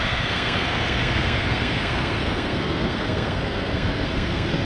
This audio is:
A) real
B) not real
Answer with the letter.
B